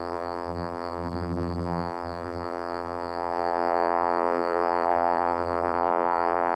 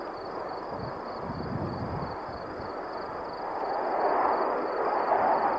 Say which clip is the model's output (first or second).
first